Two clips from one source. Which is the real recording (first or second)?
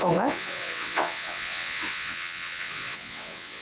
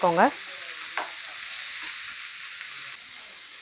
second